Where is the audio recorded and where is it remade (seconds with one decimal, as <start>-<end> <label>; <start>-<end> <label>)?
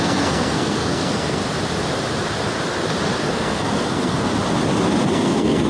0.0-1.4 remade; 1.4-3.3 recorded; 3.3-4.3 remade; 4.3-5.0 recorded; 5.0-5.7 remade